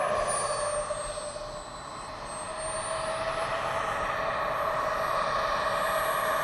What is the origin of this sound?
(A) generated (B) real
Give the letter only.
B